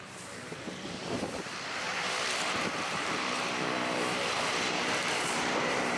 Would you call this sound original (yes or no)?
no